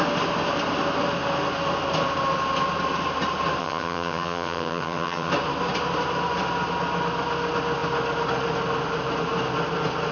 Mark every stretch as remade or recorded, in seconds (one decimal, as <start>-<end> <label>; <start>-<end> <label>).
0.0-3.6 recorded; 3.6-5.3 remade; 5.3-10.1 recorded

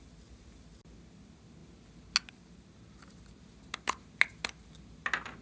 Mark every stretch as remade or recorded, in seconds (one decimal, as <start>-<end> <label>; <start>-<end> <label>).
0.0-5.4 recorded

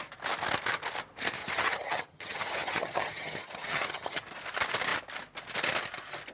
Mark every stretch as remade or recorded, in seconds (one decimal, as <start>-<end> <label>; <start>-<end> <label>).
0.0-1.4 recorded; 1.4-4.2 remade; 4.2-6.3 recorded

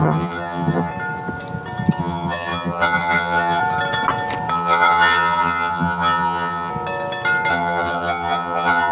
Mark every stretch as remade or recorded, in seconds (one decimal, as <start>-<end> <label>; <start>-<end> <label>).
0.0-0.9 remade; 0.9-2.0 recorded; 2.0-3.6 remade; 3.6-4.5 recorded; 4.5-6.7 remade; 6.7-7.5 recorded; 7.5-8.9 remade

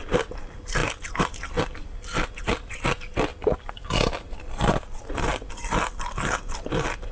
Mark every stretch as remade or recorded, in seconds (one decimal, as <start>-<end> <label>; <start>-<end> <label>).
0.0-7.1 recorded

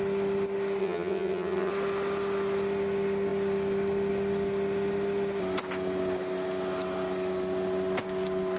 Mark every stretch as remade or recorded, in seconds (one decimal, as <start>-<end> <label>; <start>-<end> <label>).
0.0-0.8 recorded; 0.8-1.7 remade; 1.7-8.6 recorded

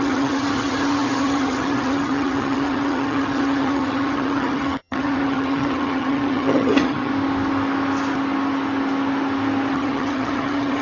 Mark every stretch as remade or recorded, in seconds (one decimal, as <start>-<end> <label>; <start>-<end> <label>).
0.0-7.1 remade; 7.1-9.7 recorded; 9.7-10.8 remade

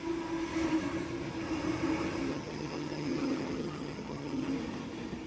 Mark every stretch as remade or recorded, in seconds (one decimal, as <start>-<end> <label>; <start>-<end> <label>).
0.0-2.3 recorded; 2.3-4.5 remade; 4.5-5.3 recorded